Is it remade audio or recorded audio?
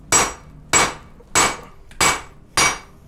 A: recorded